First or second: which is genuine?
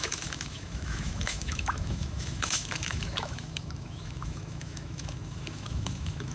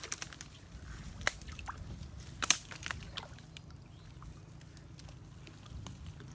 second